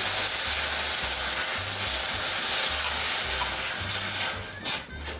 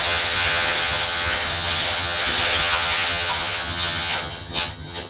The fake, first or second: second